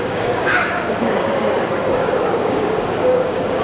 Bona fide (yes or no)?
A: no